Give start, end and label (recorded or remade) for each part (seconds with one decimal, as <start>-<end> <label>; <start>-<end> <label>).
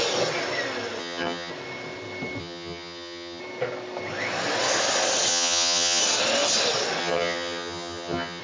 0.0-1.0 recorded; 1.0-1.5 remade; 1.5-2.4 recorded; 2.4-3.4 remade; 3.4-5.3 recorded; 5.3-6.0 remade; 6.0-7.0 recorded; 7.0-8.4 remade